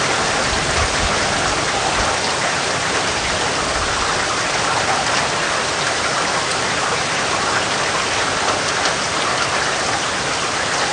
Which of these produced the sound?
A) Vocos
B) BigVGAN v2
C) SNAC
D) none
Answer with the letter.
D